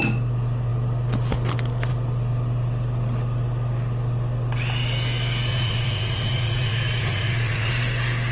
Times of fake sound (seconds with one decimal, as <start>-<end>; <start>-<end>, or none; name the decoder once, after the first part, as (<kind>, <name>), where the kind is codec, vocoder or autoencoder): 5.5-7.7 (vocoder, Vocos)

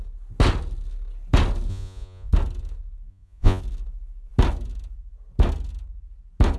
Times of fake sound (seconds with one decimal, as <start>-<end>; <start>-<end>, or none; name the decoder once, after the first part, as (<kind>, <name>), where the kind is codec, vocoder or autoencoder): 1.7-2.3 (vocoder, Vocos); 3.1-3.6